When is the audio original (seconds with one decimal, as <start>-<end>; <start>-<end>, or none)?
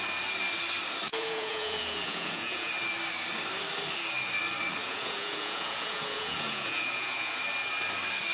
0.0-1.1; 2.7-4.8; 7.4-8.3